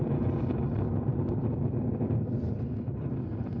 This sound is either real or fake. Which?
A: real